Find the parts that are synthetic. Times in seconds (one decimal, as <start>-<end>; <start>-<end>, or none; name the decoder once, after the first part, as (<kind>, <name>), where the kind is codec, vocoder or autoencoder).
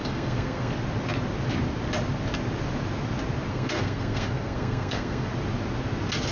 0.0-0.7 (codec, SNAC); 3.5-5.3